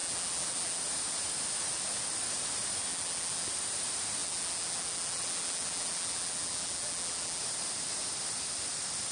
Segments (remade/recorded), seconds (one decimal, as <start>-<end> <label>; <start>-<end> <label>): 0.0-0.8 remade; 0.8-2.9 recorded; 2.9-3.5 remade; 3.5-4.2 recorded; 4.2-7.4 remade; 7.4-9.1 recorded